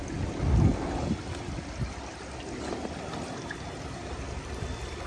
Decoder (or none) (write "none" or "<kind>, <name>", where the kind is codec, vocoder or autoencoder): none